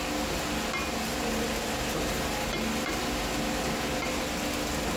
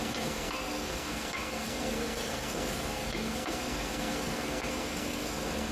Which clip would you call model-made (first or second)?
second